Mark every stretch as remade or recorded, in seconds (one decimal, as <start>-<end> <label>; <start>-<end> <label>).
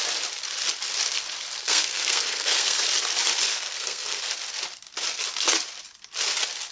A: 0.0-1.6 recorded; 1.6-2.8 remade; 2.8-3.5 recorded; 3.5-4.2 remade; 4.2-6.7 recorded